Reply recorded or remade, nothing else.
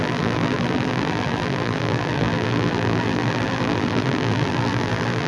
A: remade